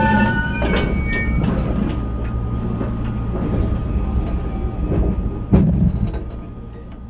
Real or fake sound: real